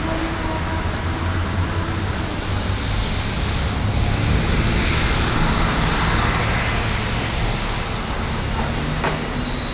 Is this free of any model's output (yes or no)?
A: yes